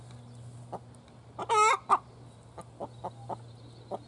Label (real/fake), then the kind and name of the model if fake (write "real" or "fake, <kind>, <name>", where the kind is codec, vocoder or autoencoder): real